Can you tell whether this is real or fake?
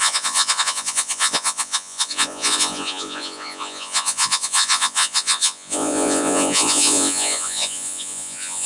fake